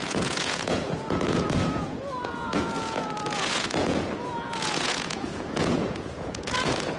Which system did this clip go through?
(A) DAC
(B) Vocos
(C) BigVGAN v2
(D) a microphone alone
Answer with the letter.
B